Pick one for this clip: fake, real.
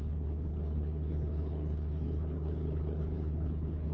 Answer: fake